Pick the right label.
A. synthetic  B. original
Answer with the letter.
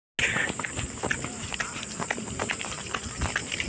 B